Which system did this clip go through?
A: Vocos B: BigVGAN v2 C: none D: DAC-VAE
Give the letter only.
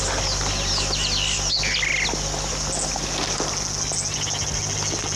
C